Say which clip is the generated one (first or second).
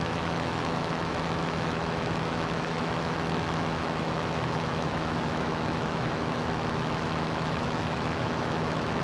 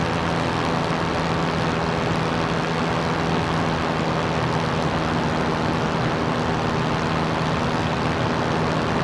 first